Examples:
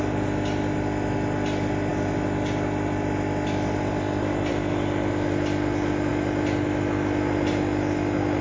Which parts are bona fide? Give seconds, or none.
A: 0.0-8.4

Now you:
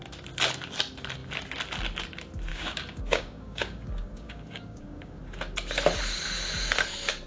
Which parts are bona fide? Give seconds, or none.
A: 0.0-2.5; 5.2-7.3

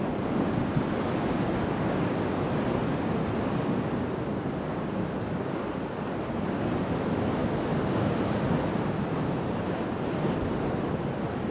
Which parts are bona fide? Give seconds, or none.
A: 0.0-11.5

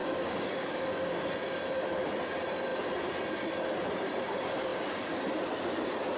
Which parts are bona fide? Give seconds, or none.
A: 1.3-6.2